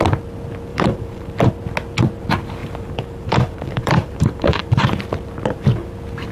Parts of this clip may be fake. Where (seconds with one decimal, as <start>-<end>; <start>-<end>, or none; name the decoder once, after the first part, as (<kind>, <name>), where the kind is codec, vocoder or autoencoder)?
0.7-1.5 (vocoder, BigVGAN v2); 2.6-5.0